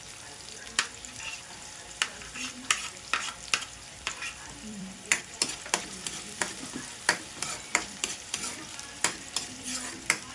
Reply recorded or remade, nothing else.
remade